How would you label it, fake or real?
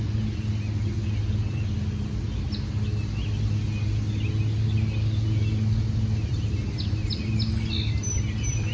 real